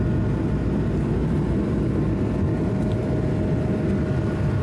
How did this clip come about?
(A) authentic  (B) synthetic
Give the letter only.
A